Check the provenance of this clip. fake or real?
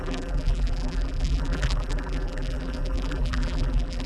fake